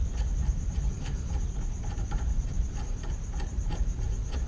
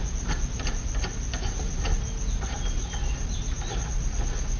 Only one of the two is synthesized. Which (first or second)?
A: first